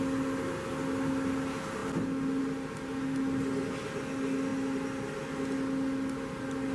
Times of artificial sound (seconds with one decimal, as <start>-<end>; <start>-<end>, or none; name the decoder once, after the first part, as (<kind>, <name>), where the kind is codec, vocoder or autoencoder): none